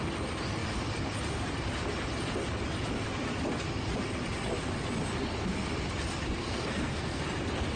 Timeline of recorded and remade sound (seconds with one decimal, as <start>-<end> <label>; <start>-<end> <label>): 0.0-6.4 recorded; 6.4-7.2 remade; 7.2-7.8 recorded